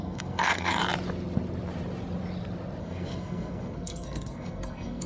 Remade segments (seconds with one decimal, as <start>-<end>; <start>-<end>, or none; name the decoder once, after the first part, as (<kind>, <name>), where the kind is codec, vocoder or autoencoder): 0.0-0.8 (codec, SNAC); 2.8-5.1